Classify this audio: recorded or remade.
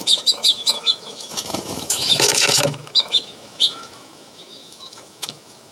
remade